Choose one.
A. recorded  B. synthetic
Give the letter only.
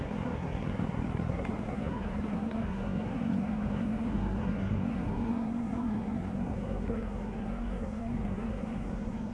B